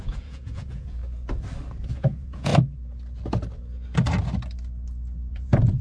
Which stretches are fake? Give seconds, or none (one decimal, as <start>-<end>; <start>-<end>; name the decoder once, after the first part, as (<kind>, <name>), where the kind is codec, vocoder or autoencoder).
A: 0.0-1.0 (vocoder, Vocos); 1.9-2.5; 5.3-5.8